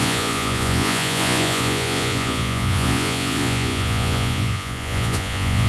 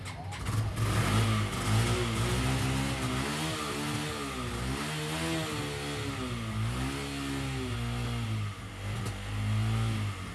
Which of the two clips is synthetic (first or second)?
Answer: first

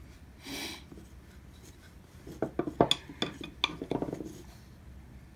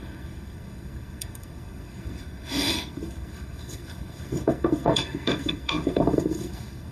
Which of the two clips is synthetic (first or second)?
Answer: second